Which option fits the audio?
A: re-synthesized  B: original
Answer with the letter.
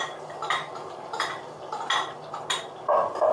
B